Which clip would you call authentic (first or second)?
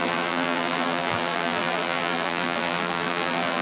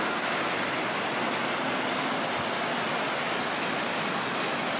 second